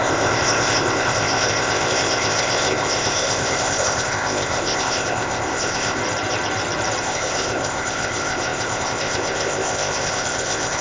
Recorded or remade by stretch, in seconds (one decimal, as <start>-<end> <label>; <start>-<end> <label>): 0.0-6.0 remade; 6.0-7.0 recorded; 7.0-10.8 remade